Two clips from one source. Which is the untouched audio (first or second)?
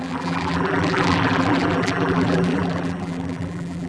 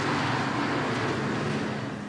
second